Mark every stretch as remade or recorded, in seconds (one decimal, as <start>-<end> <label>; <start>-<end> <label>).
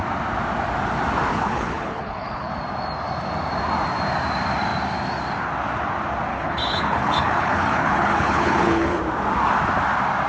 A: 0.0-1.3 recorded; 1.3-2.5 remade; 2.5-6.3 recorded; 6.3-9.0 remade; 9.0-10.3 recorded